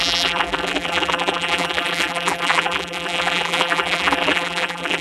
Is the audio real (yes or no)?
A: no